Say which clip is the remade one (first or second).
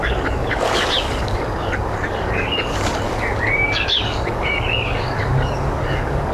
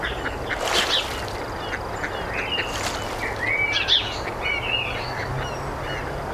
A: first